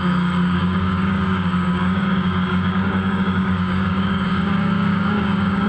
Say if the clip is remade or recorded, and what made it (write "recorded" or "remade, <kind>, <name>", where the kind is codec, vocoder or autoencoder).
remade, codec, DAC